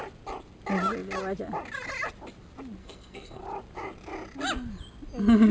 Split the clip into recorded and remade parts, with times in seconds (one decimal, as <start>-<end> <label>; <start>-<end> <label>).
0.0-2.8 recorded; 2.8-3.4 remade; 3.4-5.5 recorded